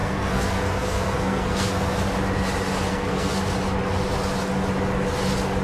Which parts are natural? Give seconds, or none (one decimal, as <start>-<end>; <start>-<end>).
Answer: 2.0-2.9; 3.4-5.6